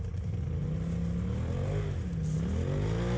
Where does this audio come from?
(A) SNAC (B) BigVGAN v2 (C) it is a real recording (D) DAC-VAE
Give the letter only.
C